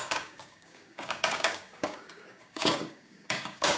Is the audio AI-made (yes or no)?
yes